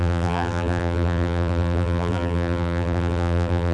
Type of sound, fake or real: fake